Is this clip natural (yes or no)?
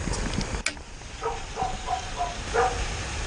yes